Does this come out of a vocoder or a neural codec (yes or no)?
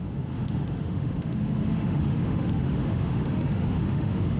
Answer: yes